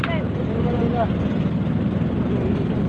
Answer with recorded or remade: recorded